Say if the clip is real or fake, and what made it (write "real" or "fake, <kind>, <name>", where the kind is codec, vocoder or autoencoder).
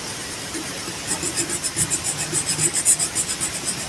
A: real